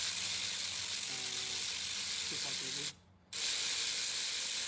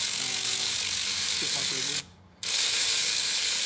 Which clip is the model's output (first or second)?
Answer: second